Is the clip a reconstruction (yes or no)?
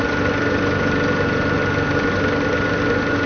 no